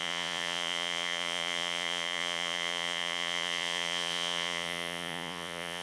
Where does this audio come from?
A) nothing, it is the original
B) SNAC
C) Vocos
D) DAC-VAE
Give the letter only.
C